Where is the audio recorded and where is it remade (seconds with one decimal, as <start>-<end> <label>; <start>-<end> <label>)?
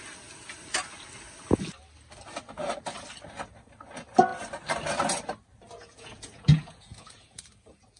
0.0-5.8 recorded; 5.8-7.4 remade; 7.4-8.0 recorded